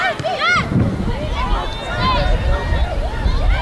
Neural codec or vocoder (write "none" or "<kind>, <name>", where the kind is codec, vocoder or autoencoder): none